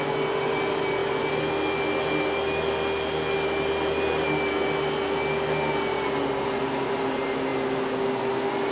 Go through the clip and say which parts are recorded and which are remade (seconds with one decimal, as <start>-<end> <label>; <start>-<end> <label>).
0.0-8.7 recorded